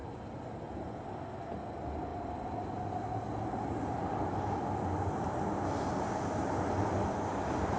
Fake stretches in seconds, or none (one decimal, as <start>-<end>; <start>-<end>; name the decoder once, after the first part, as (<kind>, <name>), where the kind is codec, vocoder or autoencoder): none